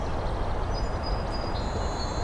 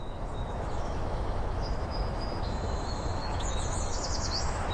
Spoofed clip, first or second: second